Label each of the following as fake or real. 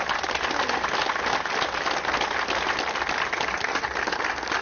real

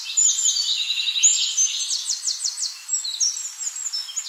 real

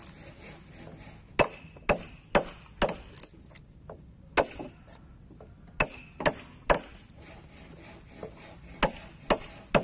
real